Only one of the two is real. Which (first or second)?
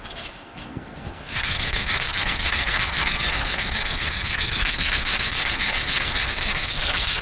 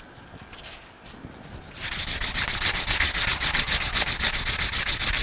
second